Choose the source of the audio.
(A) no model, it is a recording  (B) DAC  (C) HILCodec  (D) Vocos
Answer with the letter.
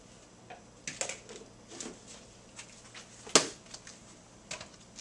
A